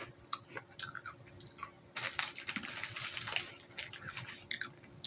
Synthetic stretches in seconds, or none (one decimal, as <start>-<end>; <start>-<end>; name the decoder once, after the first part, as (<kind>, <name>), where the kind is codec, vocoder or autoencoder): none